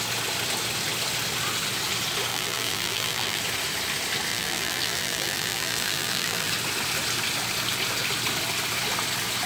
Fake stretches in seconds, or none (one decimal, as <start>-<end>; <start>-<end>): 2.3-3.4; 4.3-6.5